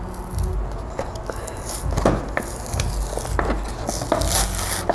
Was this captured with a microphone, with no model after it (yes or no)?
yes